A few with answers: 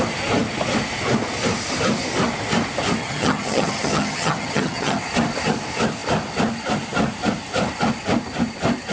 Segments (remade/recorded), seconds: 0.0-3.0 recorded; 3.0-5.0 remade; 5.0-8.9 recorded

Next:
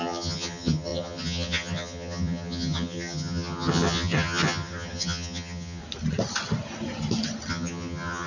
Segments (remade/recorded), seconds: 0.0-5.8 remade; 5.8-7.5 recorded; 7.5-8.3 remade

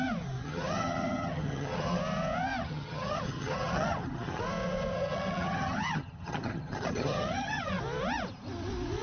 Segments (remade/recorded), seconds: 0.0-0.4 recorded; 0.4-2.0 remade; 2.0-2.6 recorded; 2.6-4.4 remade; 4.4-4.9 recorded; 4.9-7.8 remade; 7.8-9.0 recorded

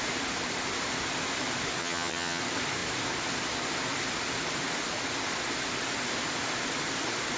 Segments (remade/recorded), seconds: 0.0-1.8 recorded; 1.8-2.4 remade; 2.4-7.4 recorded

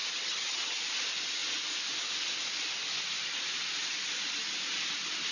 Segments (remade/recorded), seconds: 0.0-0.8 remade; 0.8-5.3 recorded

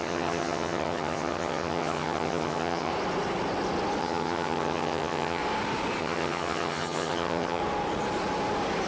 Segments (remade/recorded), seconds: 0.0-2.9 remade; 2.9-4.0 recorded; 4.0-5.4 remade; 5.4-6.0 recorded; 6.0-7.6 remade; 7.6-8.9 recorded

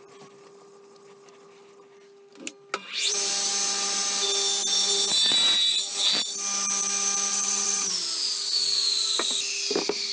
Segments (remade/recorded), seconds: 0.0-7.3 recorded; 7.3-7.9 remade; 7.9-10.1 recorded

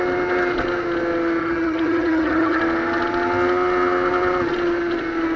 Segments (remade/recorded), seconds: 0.0-1.4 recorded; 1.4-2.6 remade; 2.6-5.4 recorded